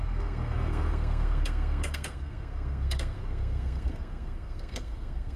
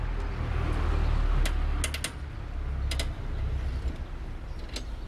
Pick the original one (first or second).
second